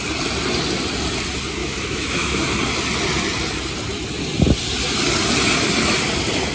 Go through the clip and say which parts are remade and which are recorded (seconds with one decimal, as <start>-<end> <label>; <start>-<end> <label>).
0.0-1.6 recorded; 1.6-2.4 remade; 2.4-6.5 recorded